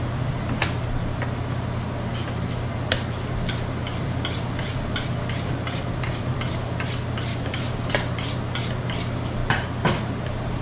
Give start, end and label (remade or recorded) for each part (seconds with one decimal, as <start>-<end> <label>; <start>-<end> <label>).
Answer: 0.0-7.3 recorded; 7.3-7.9 remade; 7.9-10.6 recorded